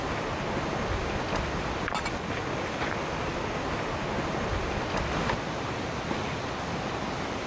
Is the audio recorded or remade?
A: recorded